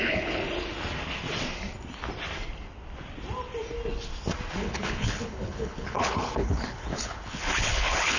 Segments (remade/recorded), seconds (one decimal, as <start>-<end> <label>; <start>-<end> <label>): 0.0-0.4 remade; 0.4-4.5 recorded; 4.5-8.2 remade